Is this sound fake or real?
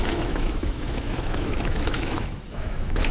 fake